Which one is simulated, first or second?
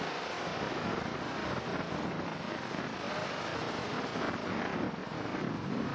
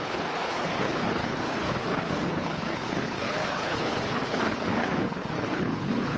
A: second